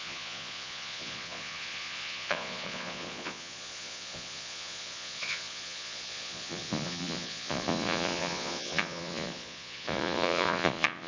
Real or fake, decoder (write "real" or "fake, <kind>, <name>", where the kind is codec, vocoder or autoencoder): fake, vocoder, Vocos